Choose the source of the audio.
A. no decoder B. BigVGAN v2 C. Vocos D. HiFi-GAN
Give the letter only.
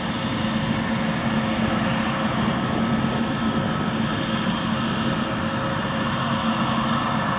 A